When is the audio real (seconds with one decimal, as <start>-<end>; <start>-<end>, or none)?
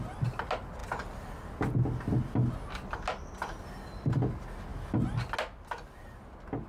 0.0-6.7